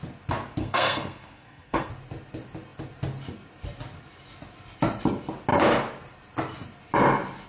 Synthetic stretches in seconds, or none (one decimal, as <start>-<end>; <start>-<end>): 0.6-1.9